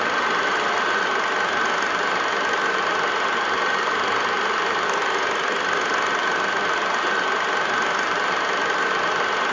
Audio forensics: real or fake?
real